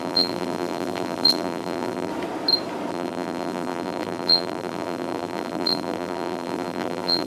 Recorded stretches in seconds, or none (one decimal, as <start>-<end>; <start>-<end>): 2.1-2.9